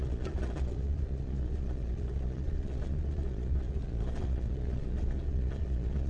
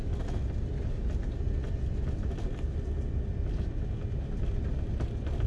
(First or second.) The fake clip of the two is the first